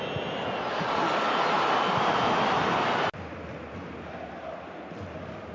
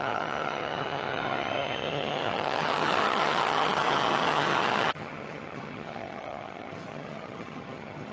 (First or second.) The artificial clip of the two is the second